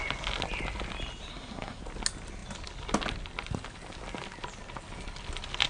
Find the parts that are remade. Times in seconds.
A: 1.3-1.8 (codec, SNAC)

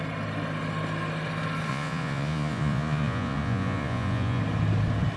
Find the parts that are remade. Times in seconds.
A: 1.7-4.4 (vocoder, Vocos)

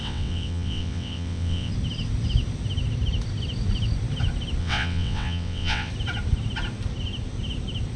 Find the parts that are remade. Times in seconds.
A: 0.0-1.7 (vocoder, WaveNeXt); 4.6-5.9

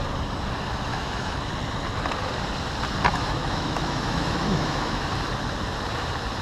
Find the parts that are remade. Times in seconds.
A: 0.9-1.5 (autoencoder, DAC-VAE); 3.1-5.1

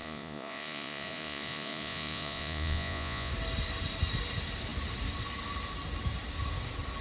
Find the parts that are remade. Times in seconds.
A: 0.0-3.3 (vocoder, Vocos)